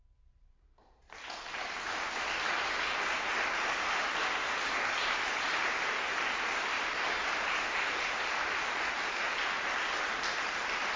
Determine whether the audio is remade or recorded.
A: recorded